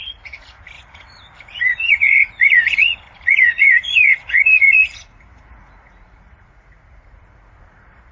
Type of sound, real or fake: fake